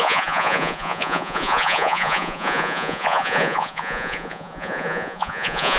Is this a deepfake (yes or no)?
yes